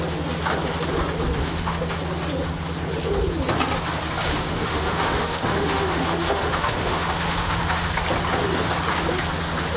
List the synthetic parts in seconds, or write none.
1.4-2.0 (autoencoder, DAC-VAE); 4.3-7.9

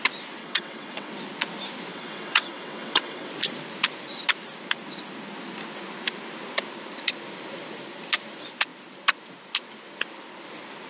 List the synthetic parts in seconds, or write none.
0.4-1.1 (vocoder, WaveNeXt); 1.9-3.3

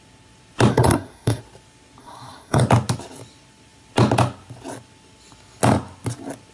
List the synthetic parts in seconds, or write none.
0.7-1.4 (codec, SNAC); 2.0-2.6